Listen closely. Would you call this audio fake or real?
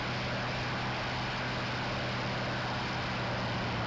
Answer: real